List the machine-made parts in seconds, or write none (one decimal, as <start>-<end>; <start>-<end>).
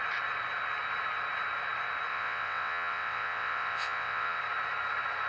2.1-4.4